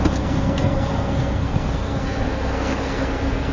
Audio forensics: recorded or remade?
remade